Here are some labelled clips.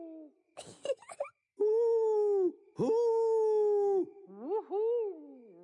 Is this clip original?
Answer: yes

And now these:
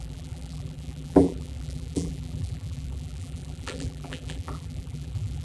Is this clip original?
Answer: no